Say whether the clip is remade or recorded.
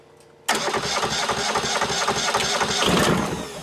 recorded